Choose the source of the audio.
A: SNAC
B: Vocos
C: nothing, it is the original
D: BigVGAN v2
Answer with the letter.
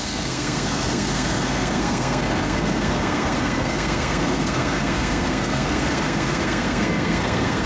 A